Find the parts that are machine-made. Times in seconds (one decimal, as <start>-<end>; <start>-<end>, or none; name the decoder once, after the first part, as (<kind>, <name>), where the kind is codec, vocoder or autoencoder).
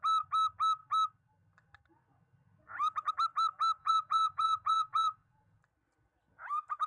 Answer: 3.8-5.6 (vocoder, Vocos)